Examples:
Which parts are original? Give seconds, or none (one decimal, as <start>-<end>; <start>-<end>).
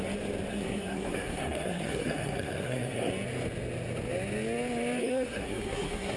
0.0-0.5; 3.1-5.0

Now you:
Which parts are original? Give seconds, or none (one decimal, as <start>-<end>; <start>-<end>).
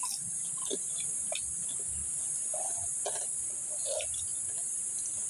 0.0-2.0; 2.7-5.3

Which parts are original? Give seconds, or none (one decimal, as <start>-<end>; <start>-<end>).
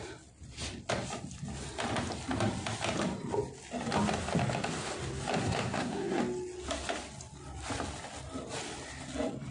0.0-5.4; 6.2-9.5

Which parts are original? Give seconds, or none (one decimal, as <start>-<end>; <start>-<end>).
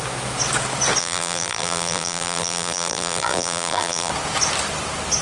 0.0-1.0; 4.1-5.2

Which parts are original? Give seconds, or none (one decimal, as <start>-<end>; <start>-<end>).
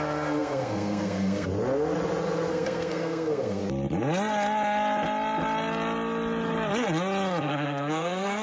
1.5-2.5; 3.6-7.4